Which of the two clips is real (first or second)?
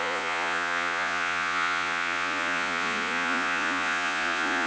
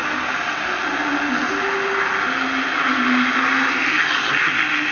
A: second